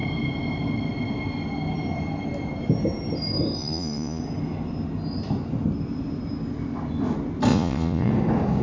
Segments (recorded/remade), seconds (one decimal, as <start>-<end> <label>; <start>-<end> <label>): 0.0-3.6 recorded; 3.6-4.2 remade; 4.2-7.5 recorded; 7.5-8.1 remade; 8.1-8.6 recorded